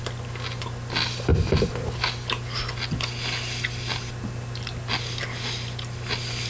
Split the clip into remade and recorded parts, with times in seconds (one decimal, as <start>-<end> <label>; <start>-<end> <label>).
0.0-6.5 recorded